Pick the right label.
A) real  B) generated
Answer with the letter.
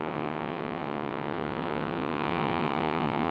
B